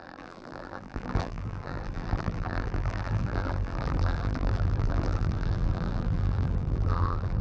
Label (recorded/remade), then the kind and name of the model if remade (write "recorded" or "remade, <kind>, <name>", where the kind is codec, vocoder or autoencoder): remade, vocoder, BigVGAN v2